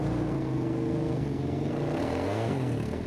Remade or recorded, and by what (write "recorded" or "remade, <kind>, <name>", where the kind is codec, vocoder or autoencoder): remade, codec, SNAC